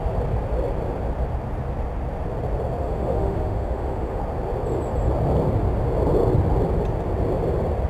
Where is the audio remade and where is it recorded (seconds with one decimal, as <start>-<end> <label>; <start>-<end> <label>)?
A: 0.0-2.8 recorded; 2.8-4.2 remade; 4.2-7.9 recorded